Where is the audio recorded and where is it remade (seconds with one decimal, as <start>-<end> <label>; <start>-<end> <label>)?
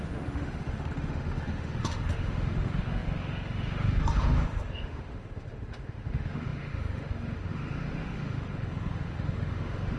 0.0-10.0 remade